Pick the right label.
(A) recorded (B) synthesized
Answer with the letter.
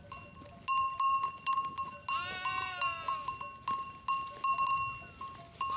A